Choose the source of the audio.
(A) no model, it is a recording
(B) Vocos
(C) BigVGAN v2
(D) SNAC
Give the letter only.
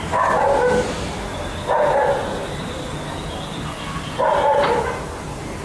A